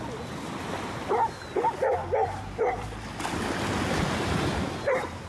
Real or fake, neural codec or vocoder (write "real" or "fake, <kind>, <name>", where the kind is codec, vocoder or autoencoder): real